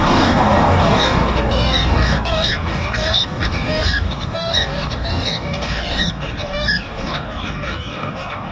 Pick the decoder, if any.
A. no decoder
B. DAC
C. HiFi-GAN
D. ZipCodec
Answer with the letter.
B